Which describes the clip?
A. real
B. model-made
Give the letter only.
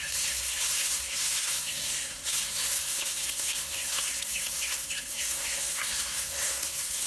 B